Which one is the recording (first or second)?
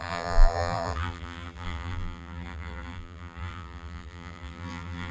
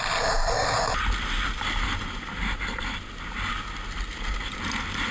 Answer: second